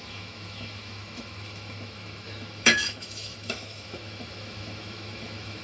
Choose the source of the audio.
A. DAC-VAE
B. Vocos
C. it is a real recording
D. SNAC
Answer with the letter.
A